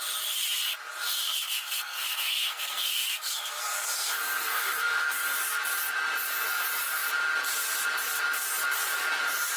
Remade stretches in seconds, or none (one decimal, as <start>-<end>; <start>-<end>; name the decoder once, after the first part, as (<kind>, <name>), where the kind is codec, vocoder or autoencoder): 1.2-5.4 (codec, SNAC)